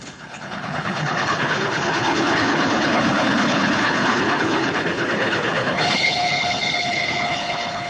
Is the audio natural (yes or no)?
no